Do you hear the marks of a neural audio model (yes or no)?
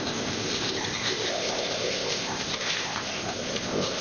yes